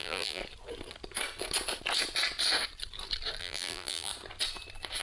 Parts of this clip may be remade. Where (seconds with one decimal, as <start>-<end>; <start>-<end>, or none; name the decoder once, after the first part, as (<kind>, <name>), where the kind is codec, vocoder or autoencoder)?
0.0-0.4 (vocoder, BigVGAN v2); 3.4-4.1

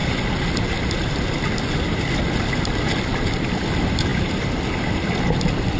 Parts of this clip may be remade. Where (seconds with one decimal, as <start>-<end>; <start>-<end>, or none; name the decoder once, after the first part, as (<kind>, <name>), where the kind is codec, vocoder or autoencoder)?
none